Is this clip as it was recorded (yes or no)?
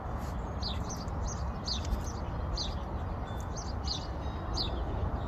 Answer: yes